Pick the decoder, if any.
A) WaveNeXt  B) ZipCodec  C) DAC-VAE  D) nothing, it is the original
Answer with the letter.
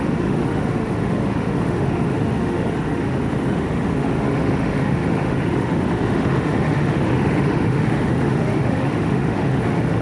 C